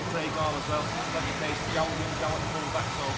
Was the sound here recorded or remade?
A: recorded